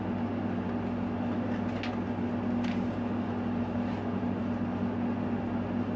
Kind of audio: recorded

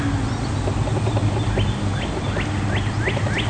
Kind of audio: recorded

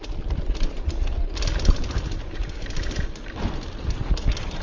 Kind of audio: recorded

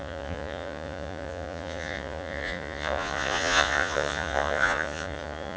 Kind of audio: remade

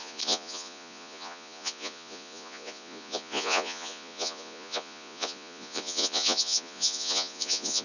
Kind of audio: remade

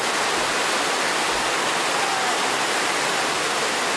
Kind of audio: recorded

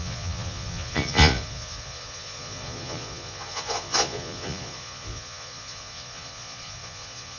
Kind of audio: remade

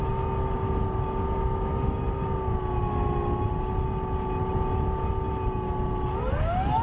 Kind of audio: recorded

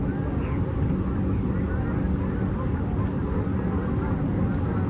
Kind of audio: recorded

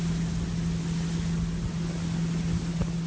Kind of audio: recorded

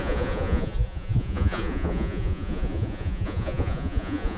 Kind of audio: remade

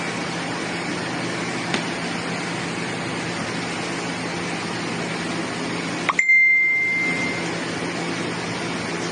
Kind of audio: recorded